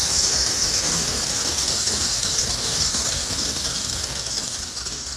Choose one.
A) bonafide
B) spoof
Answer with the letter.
B